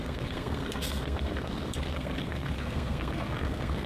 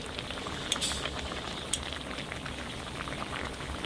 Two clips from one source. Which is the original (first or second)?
second